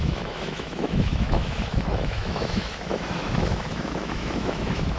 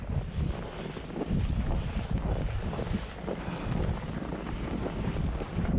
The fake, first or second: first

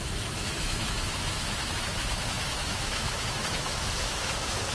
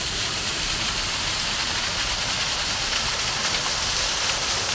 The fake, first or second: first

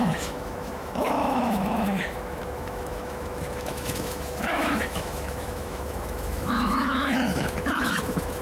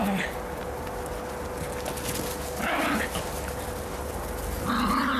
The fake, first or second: first